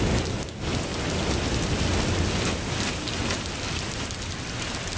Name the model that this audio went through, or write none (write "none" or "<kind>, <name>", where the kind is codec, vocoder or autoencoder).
none